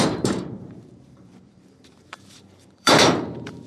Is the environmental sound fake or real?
fake